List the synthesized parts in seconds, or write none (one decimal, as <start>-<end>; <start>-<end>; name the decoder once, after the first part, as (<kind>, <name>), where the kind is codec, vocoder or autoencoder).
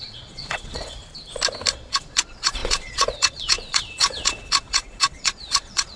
0.0-1.0 (vocoder, Vocos); 1.7-6.0